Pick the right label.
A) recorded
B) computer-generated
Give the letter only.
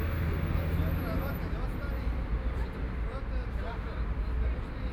A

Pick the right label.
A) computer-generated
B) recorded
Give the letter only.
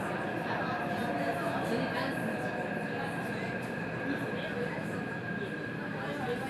B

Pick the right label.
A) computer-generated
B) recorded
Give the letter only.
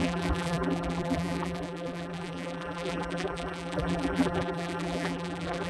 A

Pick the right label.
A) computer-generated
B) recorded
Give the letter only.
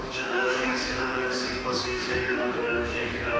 A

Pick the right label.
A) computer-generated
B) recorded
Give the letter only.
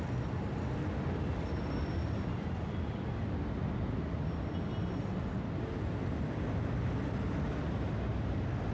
B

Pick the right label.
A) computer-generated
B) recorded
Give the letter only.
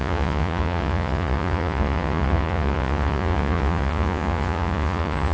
A